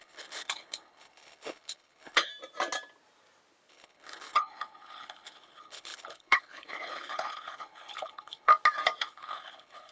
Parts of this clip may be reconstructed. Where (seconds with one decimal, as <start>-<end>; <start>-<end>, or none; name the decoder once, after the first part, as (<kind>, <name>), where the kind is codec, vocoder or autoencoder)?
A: 0.0-2.3 (codec, HILCodec); 3.7-8.5; 9.0-9.9